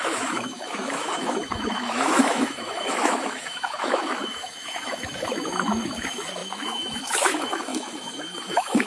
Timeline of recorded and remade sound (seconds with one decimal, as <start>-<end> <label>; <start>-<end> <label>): 0.0-8.9 remade